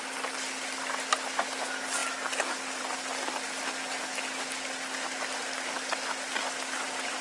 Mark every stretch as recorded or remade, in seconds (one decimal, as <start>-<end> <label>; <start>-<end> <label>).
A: 0.0-7.2 recorded